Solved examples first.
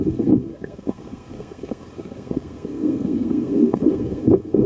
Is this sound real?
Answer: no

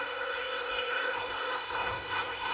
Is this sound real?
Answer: no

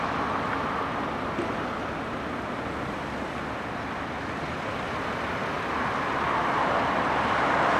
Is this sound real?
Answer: yes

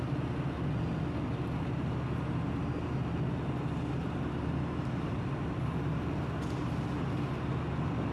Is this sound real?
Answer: yes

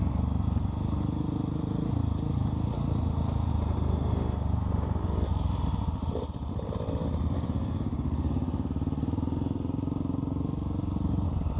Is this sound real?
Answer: yes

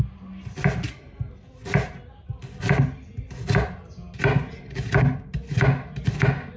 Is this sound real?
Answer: yes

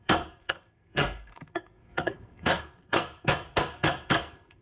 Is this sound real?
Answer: no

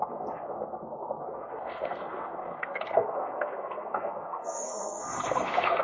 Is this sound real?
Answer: no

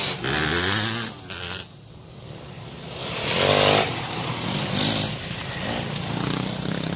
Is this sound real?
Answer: yes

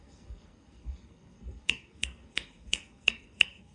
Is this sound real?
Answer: no